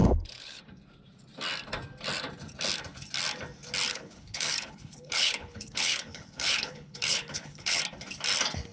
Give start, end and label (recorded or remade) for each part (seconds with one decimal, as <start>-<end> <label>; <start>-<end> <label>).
0.0-0.6 remade; 0.6-3.9 recorded; 3.9-7.8 remade; 7.8-8.7 recorded